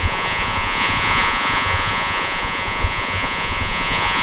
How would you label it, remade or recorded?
remade